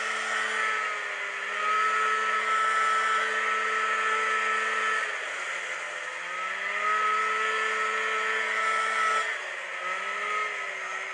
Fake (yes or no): no